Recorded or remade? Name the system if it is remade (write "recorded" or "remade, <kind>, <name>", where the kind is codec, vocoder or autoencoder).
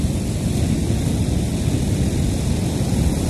recorded